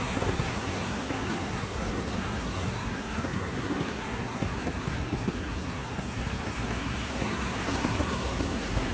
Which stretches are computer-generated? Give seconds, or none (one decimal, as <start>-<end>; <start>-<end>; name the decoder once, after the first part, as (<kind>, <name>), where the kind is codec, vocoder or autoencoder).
0.0-8.9 (codec, SNAC)